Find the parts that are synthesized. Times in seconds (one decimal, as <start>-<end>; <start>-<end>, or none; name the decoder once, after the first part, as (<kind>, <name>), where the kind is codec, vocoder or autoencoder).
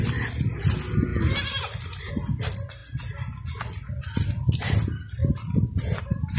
5.2-6.0 (vocoder, BigVGAN v2)